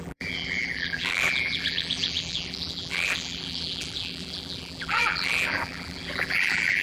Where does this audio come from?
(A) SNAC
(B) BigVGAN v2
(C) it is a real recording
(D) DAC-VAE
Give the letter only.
B